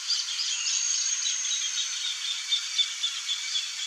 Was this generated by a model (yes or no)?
no